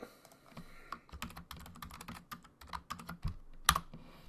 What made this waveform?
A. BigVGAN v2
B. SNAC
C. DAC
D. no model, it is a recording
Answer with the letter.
D